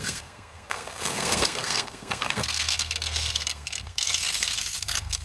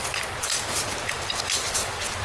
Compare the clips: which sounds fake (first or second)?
first